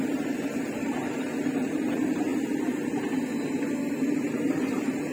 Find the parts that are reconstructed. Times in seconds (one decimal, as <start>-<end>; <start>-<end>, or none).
0.0-2.3; 3.9-5.1